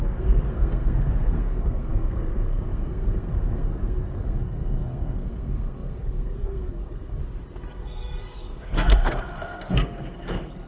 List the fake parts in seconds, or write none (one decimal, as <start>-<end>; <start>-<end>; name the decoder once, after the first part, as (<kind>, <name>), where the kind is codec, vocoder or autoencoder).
0.0-7.2 (codec, SNAC); 7.7-10.7